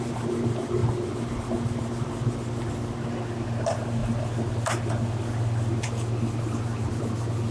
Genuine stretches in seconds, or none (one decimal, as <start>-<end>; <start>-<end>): 0.0-7.5